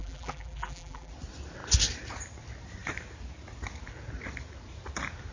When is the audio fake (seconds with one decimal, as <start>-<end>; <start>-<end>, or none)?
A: 0.0-1.1